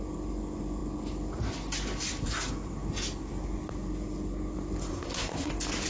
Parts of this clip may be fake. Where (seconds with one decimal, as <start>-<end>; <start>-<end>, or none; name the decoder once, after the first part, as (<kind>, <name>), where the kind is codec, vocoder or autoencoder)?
4.9-5.5 (codec, SNAC)